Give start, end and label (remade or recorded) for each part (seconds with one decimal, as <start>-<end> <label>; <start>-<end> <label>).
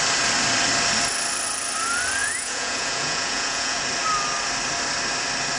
0.0-2.2 recorded; 2.2-3.8 remade; 3.8-5.6 recorded